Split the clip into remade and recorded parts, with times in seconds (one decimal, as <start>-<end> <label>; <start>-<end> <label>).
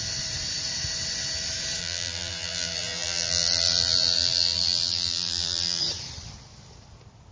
0.0-1.8 recorded; 1.8-5.8 remade; 5.8-7.3 recorded